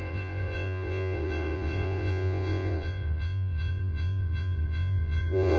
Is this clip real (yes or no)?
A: no